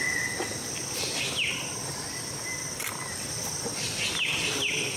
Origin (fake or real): real